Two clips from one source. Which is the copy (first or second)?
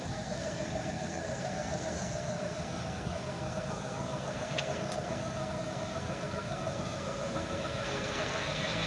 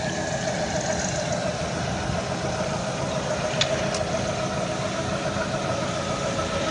first